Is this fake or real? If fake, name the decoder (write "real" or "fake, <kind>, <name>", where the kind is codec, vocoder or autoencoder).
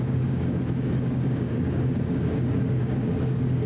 fake, codec, DAC